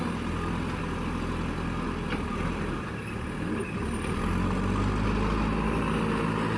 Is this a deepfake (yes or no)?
no